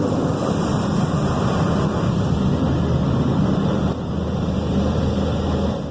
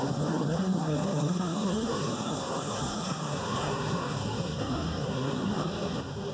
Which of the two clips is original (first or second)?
first